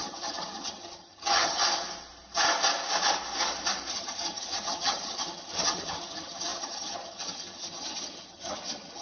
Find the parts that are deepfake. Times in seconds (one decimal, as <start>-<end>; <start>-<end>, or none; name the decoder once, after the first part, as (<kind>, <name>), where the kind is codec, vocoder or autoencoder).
0.0-1.6 (vocoder, HiFi-GAN); 3.9-9.0